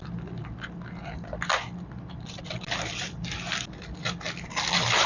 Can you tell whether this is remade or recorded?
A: recorded